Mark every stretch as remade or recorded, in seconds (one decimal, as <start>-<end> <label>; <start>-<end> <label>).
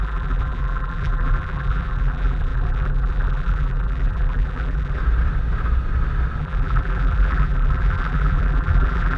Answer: 0.0-5.0 remade; 5.0-6.4 recorded; 6.4-9.2 remade